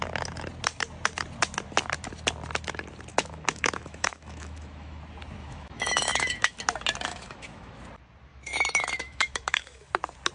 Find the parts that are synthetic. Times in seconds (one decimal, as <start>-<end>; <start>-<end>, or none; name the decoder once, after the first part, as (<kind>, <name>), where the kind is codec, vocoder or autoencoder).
3.1-5.0 (autoencoder, DAC-VAE); 5.4-6.6; 7.1-7.8; 8.3-9.9